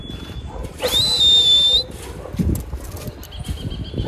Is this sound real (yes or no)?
yes